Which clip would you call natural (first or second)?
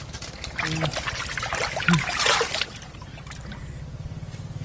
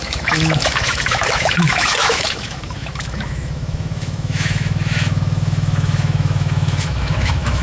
first